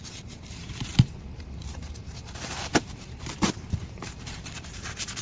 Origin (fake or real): fake